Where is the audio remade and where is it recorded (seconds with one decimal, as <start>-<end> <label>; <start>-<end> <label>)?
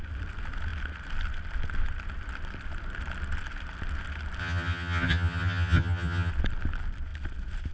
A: 0.0-4.4 recorded; 4.4-6.3 remade; 6.3-7.7 recorded